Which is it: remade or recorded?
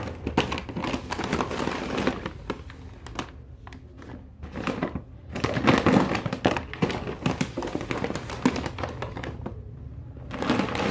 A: recorded